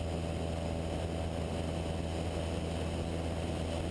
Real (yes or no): yes